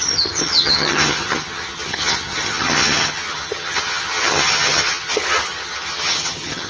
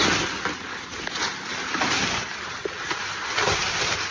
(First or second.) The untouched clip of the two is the second